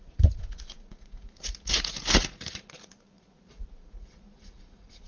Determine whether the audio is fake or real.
fake